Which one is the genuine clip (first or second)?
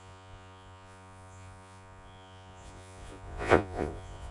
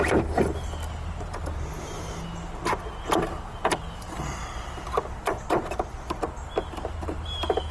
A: second